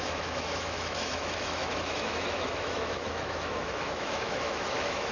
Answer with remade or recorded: remade